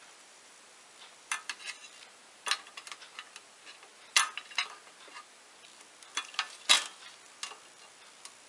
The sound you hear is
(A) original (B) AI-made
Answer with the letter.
A